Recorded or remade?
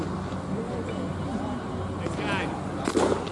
recorded